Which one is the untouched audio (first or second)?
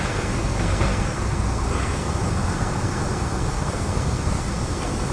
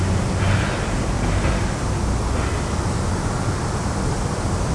second